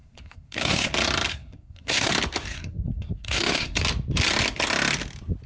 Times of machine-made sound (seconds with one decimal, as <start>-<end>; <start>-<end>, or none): 0.0-0.9; 1.3-2.1; 2.5-3.8